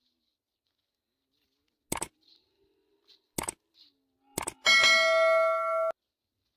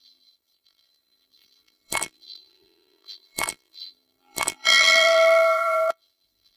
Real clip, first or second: first